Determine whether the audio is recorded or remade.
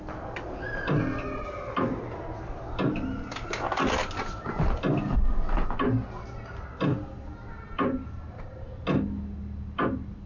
recorded